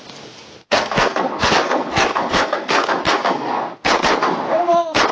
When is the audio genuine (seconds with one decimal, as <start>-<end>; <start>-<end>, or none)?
0.0-0.7; 3.6-5.1